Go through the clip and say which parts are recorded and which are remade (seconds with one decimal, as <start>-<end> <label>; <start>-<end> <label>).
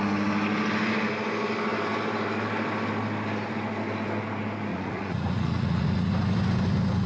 0.0-4.7 recorded; 4.7-6.1 remade; 6.1-7.1 recorded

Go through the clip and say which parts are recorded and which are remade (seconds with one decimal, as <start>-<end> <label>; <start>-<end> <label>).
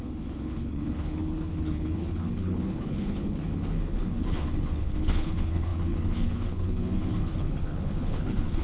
0.0-8.6 remade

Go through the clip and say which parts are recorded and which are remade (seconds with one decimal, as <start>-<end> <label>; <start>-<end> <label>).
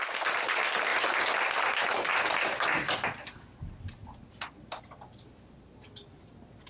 0.0-6.7 recorded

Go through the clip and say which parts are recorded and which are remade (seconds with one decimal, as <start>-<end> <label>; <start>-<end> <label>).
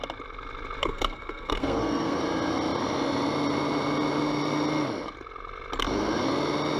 0.0-0.8 recorded; 0.8-2.2 remade; 2.2-6.8 recorded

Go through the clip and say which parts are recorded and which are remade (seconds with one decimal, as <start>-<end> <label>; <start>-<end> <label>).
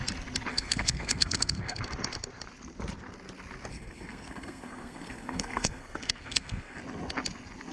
0.0-0.5 recorded; 0.5-1.8 remade; 1.8-3.7 recorded; 3.7-6.8 remade; 6.8-7.7 recorded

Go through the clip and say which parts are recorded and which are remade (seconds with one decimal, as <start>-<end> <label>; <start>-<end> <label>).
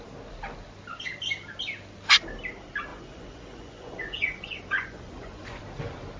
0.0-2.9 recorded; 2.9-5.6 remade; 5.6-6.2 recorded